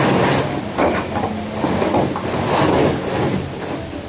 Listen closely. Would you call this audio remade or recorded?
recorded